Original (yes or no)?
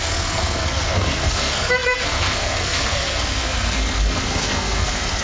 no